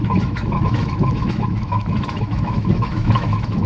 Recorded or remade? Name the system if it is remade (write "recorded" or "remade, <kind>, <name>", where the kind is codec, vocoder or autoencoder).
remade, autoencoder, DAC-VAE